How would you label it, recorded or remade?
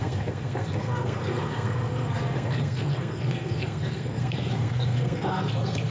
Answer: remade